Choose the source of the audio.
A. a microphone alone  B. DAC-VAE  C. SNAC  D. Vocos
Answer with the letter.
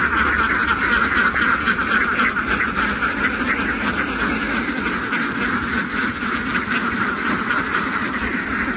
A